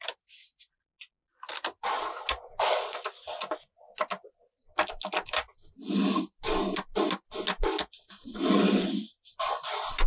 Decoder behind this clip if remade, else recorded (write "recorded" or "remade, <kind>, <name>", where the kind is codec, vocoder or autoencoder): recorded